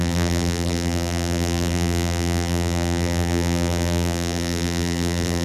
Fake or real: fake